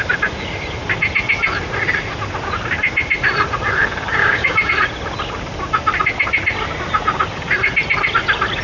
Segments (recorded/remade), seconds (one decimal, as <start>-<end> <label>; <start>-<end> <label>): 0.0-4.2 recorded; 4.2-4.7 remade; 4.7-8.6 recorded

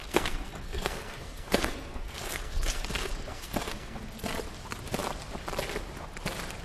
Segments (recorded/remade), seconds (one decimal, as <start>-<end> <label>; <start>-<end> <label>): 0.0-4.0 remade; 4.0-6.6 recorded

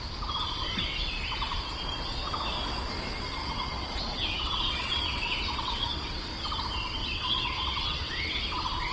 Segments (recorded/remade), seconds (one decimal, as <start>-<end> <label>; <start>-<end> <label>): 0.0-0.9 recorded; 0.9-1.6 remade; 1.6-3.4 recorded; 3.4-6.3 remade; 6.3-7.0 recorded; 7.0-8.4 remade; 8.4-8.9 recorded